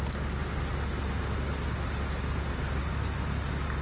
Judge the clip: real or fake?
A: real